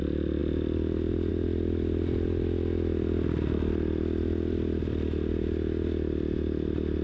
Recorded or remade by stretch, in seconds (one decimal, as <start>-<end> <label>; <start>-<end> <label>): 0.0-7.0 recorded